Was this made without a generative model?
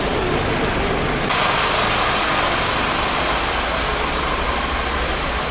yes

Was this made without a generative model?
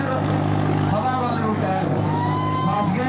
no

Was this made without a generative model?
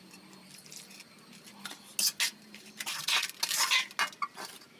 yes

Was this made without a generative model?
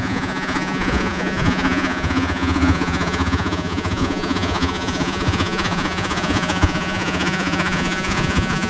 no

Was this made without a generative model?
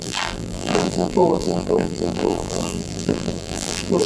no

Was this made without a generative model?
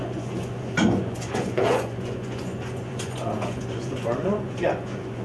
no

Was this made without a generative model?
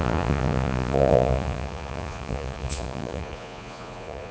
no